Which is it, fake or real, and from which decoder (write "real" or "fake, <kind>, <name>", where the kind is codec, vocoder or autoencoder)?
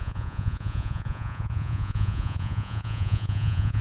fake, vocoder, Vocos